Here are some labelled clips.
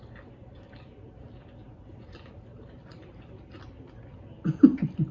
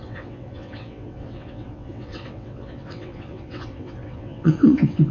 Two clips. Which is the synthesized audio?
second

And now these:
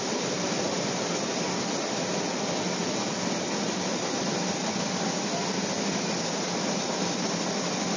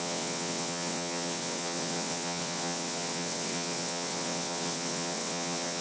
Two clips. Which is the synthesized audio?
second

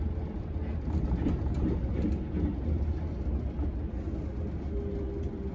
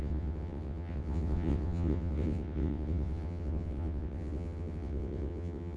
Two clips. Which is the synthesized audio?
second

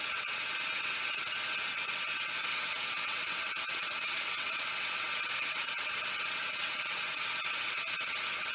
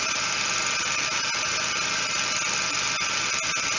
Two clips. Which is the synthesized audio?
first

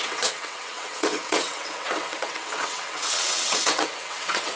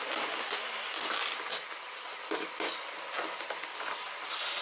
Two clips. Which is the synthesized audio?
first